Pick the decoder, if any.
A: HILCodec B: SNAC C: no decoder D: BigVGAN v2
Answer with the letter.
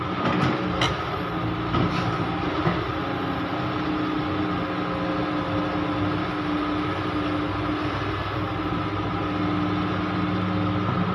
C